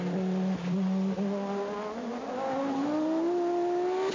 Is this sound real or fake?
real